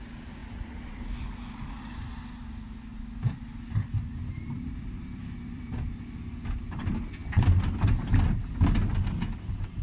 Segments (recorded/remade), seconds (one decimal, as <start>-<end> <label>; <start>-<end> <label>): 0.0-0.4 recorded; 0.4-5.7 remade; 5.7-9.8 recorded